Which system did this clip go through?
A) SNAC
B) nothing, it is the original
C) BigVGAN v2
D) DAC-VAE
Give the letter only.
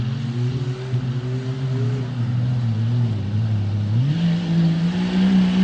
B